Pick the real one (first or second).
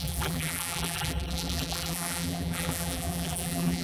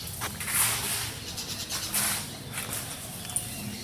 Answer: second